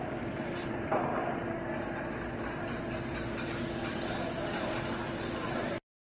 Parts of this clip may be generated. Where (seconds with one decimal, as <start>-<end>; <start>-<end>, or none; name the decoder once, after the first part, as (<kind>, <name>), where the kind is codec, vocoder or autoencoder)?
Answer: 0.0-1.1 (vocoder, BigVGAN v2); 4.6-6.1